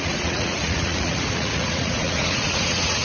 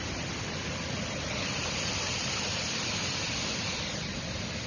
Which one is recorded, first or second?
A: second